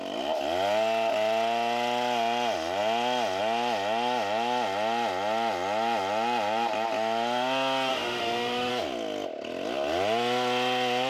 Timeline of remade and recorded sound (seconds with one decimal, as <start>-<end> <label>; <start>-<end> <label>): 0.0-7.9 recorded; 7.9-8.7 remade; 8.7-11.1 recorded

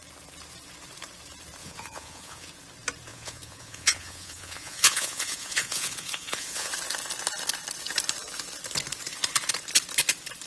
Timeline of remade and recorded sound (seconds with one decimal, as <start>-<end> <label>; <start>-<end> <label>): 0.0-1.6 recorded; 1.6-2.5 remade; 2.5-3.1 recorded; 3.1-6.7 remade; 6.7-10.5 recorded

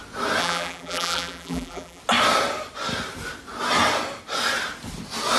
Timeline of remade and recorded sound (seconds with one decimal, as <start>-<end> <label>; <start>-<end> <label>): 0.0-0.4 recorded; 0.4-2.0 remade; 2.0-5.4 recorded

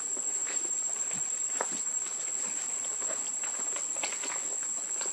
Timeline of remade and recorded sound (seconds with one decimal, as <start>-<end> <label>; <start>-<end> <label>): 0.0-0.4 recorded; 0.4-2.3 remade; 2.3-5.1 recorded

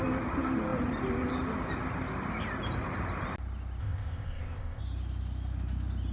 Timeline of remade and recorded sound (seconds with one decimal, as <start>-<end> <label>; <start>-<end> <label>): 0.0-3.8 recorded; 3.8-4.8 remade; 4.8-6.1 recorded

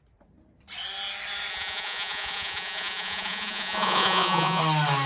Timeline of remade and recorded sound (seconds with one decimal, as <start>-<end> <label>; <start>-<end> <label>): 0.0-1.5 recorded; 1.5-4.6 remade; 4.6-5.1 recorded